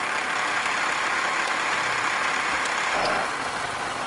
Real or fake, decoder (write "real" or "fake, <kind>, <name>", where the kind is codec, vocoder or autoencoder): real